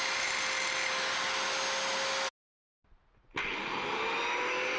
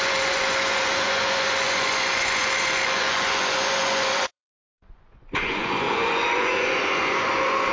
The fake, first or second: second